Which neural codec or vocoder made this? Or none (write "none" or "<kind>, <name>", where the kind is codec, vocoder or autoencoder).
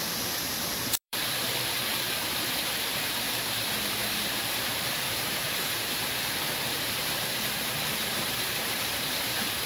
vocoder, BigVGAN v2